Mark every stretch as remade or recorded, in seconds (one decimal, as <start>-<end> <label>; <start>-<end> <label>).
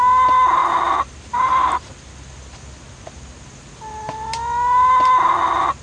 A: 0.0-0.6 recorded; 0.6-2.0 remade; 2.0-5.8 recorded